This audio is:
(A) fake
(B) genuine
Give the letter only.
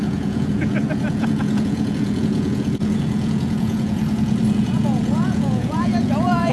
A